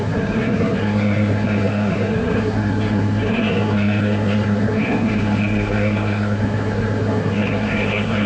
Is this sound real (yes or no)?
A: no